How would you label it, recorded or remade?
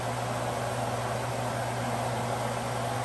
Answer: recorded